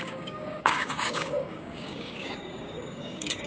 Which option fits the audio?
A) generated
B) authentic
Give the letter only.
A